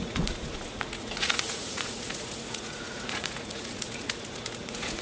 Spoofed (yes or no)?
yes